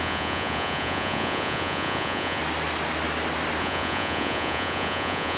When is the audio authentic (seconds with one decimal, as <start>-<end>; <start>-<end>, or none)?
2.4-3.6